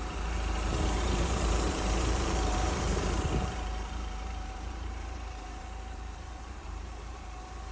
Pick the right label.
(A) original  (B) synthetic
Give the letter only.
B